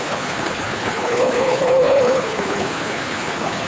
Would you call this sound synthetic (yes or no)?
yes